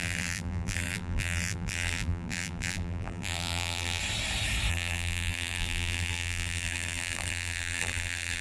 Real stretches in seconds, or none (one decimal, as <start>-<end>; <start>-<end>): 4.0-4.7